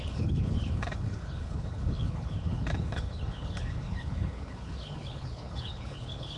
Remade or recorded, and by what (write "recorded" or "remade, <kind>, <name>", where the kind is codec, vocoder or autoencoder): remade, codec, HILCodec